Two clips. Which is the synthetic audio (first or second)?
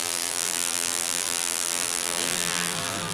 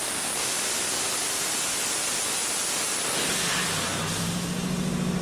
first